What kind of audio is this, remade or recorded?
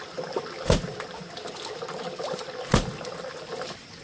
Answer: recorded